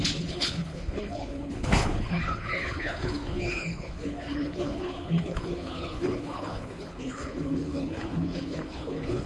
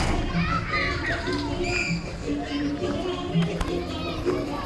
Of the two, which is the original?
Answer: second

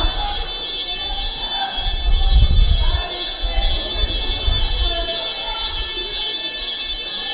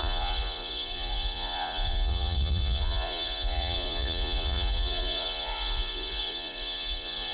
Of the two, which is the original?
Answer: first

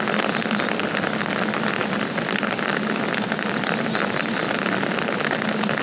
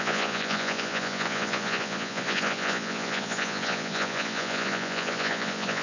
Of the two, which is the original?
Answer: first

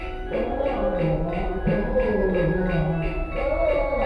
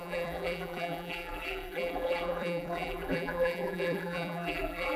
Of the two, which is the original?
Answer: first